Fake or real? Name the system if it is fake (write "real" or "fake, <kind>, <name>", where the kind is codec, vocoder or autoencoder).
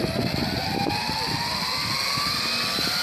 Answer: real